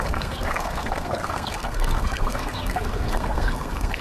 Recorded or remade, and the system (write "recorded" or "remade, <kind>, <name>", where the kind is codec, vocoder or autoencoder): remade, codec, SNAC